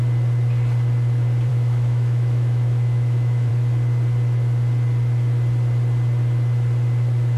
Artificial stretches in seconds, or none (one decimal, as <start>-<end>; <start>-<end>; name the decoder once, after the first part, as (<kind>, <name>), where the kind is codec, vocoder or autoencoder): 1.5-3.5 (autoencoder, DAC-VAE)